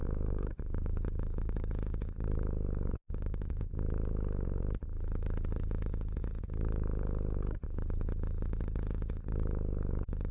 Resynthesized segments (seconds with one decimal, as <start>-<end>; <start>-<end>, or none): 0.0-1.7; 2.9-3.7